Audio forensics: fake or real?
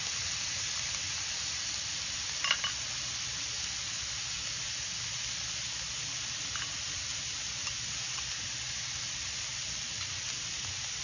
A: real